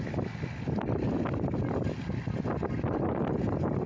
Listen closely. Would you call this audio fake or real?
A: real